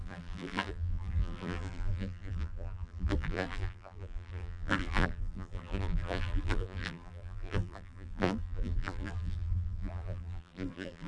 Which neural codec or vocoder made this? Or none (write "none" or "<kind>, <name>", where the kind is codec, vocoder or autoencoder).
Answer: vocoder, BigVGAN v2